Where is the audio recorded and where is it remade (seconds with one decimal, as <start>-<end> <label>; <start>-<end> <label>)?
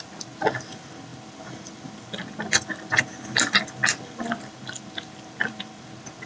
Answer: 0.0-6.3 recorded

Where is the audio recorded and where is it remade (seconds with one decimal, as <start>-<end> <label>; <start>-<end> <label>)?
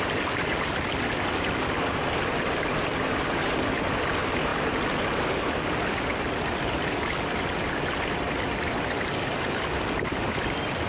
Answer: 0.0-4.5 recorded; 4.5-5.3 remade; 5.3-10.9 recorded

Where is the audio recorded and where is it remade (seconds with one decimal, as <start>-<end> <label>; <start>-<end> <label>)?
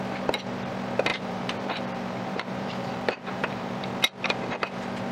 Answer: 0.0-1.1 recorded; 1.1-3.8 remade; 3.8-5.1 recorded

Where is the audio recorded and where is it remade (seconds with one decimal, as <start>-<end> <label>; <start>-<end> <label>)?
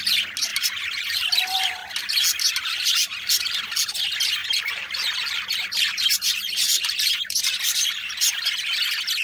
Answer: 0.0-0.5 recorded; 0.5-1.4 remade; 1.4-4.4 recorded; 4.4-7.9 remade; 7.9-9.2 recorded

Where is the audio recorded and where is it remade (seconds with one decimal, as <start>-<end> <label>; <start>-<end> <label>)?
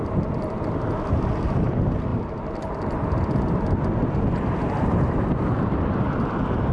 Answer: 0.0-6.7 recorded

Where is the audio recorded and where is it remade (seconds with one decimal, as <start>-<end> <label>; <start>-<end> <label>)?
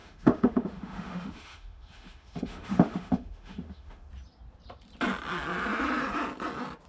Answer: 0.0-4.1 remade; 4.1-6.9 recorded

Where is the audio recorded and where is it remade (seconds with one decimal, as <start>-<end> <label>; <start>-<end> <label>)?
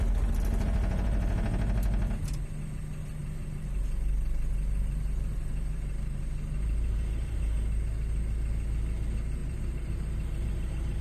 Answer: 0.0-3.2 recorded; 3.2-7.4 remade; 7.4-9.4 recorded; 9.4-11.0 remade